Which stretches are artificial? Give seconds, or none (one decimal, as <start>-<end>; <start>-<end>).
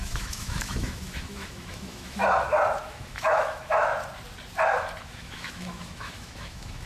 0.0-2.2; 2.8-3.9; 5.0-6.9